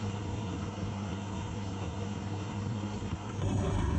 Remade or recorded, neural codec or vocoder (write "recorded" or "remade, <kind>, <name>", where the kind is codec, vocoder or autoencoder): remade, codec, SNAC